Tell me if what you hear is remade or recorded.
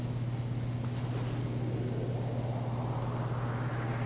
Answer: recorded